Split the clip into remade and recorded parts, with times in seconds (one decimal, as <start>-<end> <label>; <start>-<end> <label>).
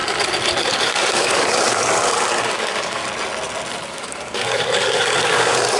0.0-0.6 recorded; 0.6-3.0 remade; 3.0-3.9 recorded; 3.9-5.8 remade